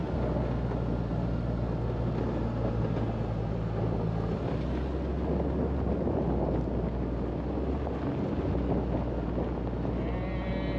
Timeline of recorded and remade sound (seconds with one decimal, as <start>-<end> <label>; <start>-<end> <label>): 0.0-10.8 recorded